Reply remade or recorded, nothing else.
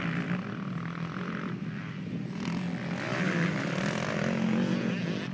recorded